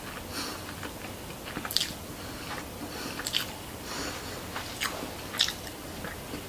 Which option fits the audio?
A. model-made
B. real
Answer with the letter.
B